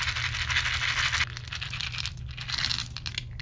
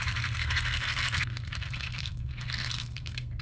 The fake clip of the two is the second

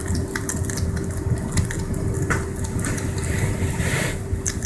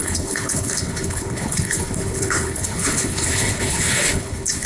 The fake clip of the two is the second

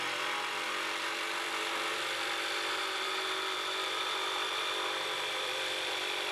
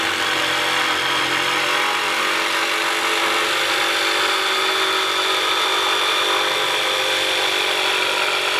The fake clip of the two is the first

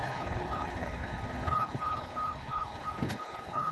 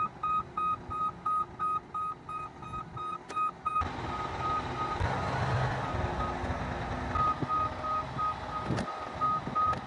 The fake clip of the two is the first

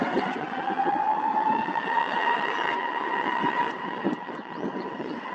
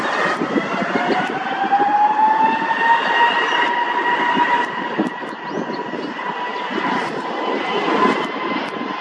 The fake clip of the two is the first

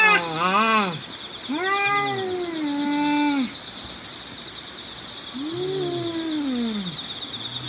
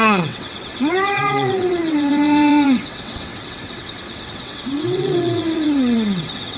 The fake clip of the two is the second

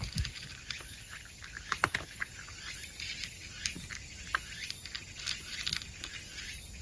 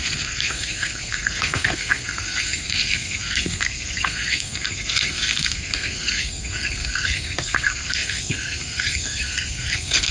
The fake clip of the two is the second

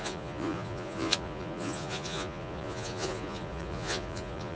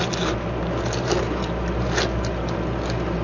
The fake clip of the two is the first